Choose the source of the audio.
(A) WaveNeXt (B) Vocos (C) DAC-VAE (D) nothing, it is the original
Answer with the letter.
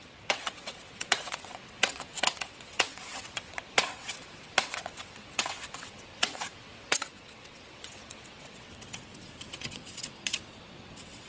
A